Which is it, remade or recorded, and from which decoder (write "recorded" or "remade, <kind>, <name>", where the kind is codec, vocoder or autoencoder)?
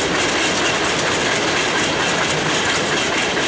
recorded